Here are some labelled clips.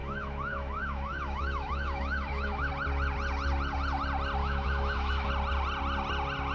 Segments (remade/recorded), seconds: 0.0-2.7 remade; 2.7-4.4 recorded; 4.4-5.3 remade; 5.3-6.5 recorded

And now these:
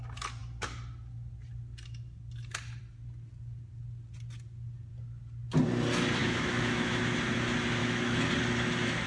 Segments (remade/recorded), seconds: 0.0-6.2 recorded; 6.2-7.0 remade; 7.0-7.8 recorded; 7.8-8.3 remade; 8.3-9.1 recorded

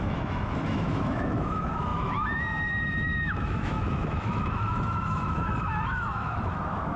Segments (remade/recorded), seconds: 0.0-7.0 remade

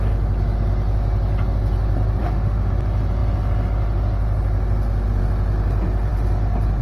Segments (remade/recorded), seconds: 0.0-2.2 recorded; 2.2-2.7 remade; 2.7-6.8 recorded